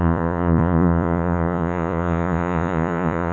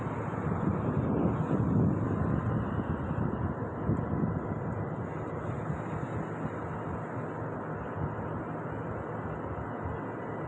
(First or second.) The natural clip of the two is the second